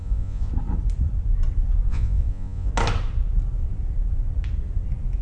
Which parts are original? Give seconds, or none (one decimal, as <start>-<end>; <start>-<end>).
0.5-1.9; 2.7-5.2